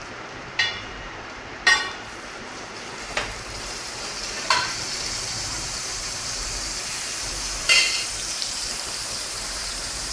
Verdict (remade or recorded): remade